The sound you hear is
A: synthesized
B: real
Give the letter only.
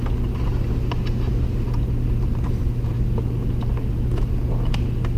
B